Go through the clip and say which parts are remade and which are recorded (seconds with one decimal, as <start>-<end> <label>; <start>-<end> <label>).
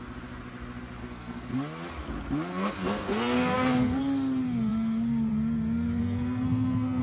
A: 0.0-1.0 recorded; 1.0-1.5 remade; 1.5-2.5 recorded; 2.5-4.0 remade; 4.0-6.0 recorded; 6.0-7.0 remade